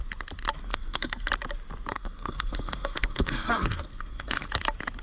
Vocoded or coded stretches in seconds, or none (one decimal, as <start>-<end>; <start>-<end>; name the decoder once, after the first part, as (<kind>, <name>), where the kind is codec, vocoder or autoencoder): 0.7-1.3 (codec, SNAC); 1.9-4.5